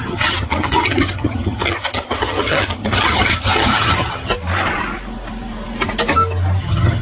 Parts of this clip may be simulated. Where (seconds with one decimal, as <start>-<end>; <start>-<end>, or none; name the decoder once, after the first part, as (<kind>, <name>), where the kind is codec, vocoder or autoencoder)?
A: 0.0-4.3 (vocoder, HiFi-GAN); 6.6-7.0